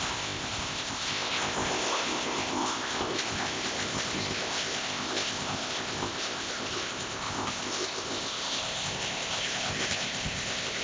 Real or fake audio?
fake